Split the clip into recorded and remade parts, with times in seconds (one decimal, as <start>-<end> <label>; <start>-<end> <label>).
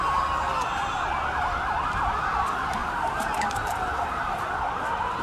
0.0-2.8 recorded; 2.8-4.4 remade; 4.4-5.2 recorded